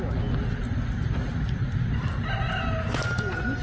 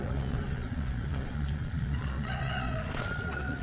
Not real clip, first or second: second